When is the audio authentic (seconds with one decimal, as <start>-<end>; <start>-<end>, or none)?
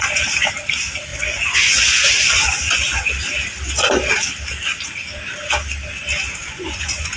0.0-1.1; 3.1-6.4